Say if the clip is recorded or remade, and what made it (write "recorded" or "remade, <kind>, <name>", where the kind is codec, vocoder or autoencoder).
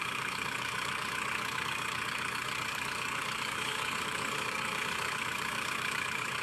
remade, codec, DAC